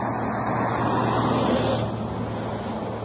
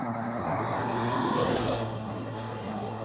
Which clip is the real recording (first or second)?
first